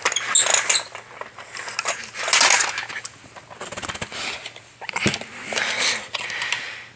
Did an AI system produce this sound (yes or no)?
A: no